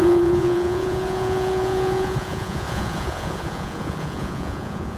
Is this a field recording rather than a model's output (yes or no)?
no